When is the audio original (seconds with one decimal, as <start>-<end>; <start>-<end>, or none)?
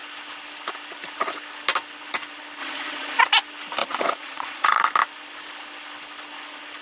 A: 0.0-2.6; 3.2-3.8; 4.8-6.8